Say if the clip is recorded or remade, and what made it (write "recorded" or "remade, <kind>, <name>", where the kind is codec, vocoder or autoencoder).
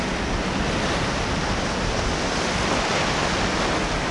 recorded